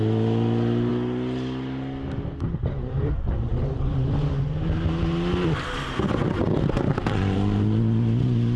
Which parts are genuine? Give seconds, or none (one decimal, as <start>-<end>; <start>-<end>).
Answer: 0.0-8.6